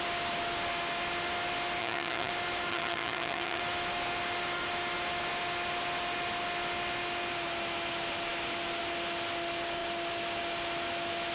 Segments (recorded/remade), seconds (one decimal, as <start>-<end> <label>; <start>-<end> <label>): 0.0-1.8 recorded; 1.8-2.3 remade; 2.3-2.7 recorded; 2.7-3.6 remade; 3.6-11.3 recorded